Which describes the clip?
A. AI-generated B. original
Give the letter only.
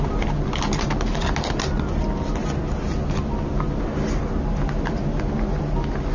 B